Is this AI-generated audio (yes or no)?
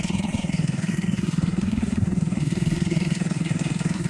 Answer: yes